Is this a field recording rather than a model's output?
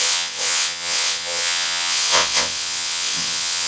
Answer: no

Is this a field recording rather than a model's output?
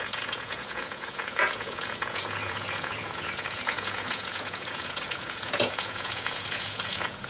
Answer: no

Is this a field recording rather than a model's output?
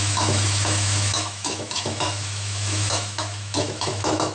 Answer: no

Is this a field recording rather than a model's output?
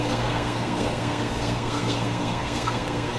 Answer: no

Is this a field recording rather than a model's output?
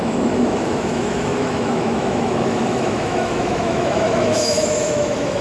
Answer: no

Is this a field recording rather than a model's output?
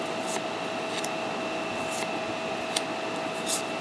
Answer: yes